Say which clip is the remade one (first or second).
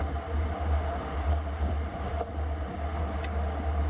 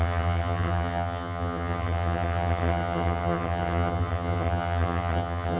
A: second